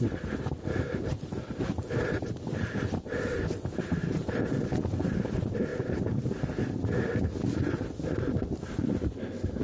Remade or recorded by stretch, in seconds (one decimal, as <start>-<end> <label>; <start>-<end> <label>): 0.0-9.6 recorded